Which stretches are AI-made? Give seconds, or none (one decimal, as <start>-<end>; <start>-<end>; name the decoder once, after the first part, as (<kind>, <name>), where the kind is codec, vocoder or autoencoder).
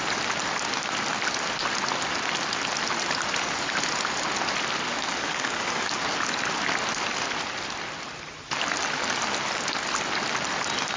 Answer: 4.9-6.0 (codec, DAC)